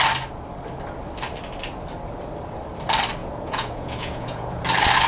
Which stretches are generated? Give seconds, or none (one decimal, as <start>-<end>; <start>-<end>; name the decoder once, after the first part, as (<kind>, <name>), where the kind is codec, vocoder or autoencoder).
3.2-4.6 (vocoder, Vocos)